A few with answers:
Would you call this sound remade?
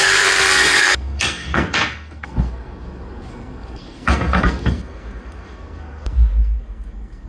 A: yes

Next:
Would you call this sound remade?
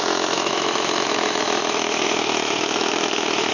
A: yes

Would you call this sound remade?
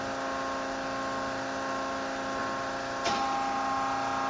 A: no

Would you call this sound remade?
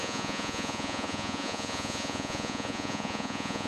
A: yes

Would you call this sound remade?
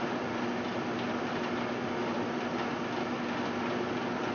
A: no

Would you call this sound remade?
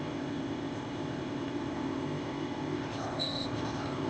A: yes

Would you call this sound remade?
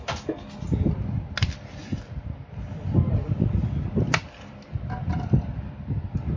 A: no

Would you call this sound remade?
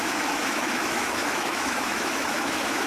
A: yes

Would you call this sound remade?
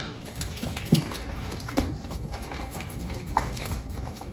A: yes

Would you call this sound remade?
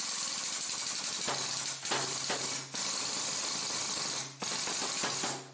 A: no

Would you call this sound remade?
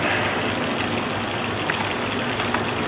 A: no